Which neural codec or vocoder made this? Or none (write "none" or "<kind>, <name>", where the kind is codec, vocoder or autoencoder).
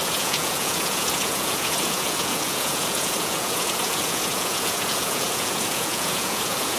vocoder, Vocos